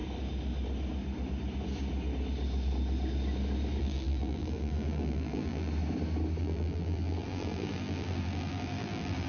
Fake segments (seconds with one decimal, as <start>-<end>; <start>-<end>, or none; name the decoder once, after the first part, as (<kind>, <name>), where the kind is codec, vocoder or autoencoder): 3.8-5.7 (vocoder, BigVGAN v2); 6.4-9.3